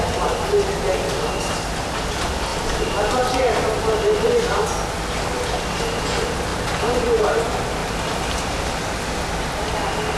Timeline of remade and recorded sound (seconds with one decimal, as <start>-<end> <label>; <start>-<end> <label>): 0.0-10.2 recorded